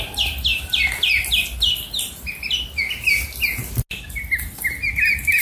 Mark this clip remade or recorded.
recorded